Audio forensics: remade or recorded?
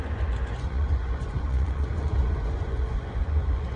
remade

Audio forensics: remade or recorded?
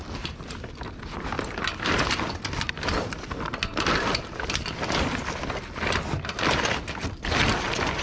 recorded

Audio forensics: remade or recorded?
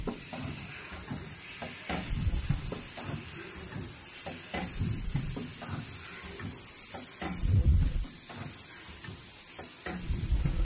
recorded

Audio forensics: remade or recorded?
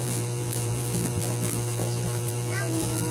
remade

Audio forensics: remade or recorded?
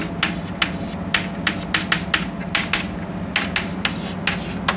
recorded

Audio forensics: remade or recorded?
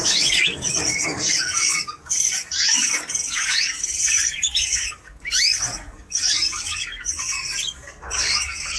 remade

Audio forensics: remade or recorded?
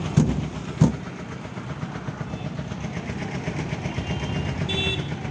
recorded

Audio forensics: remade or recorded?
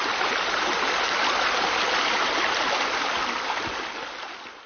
recorded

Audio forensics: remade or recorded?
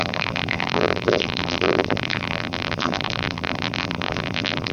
remade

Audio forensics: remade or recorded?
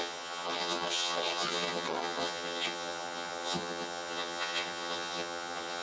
remade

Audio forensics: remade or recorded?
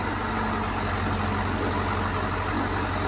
recorded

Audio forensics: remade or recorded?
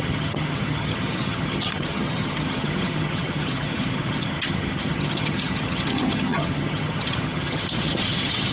remade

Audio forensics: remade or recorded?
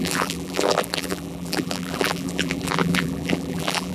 remade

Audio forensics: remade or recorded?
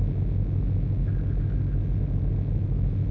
recorded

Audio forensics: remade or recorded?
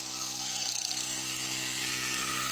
remade